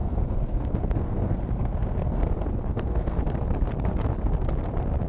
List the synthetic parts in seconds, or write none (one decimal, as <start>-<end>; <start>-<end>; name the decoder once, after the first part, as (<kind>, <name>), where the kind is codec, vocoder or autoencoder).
0.0-2.3 (codec, SNAC); 2.7-3.2